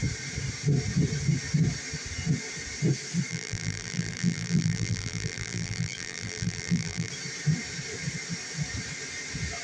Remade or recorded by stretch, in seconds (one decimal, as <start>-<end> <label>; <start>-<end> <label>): 0.0-3.3 recorded; 3.3-7.1 remade; 7.1-9.6 recorded